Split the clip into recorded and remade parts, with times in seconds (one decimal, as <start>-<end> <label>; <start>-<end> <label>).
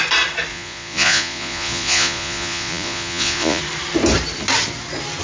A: 0.0-0.5 recorded; 0.5-3.6 remade; 3.6-5.2 recorded